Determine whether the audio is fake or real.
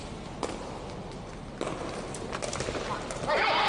real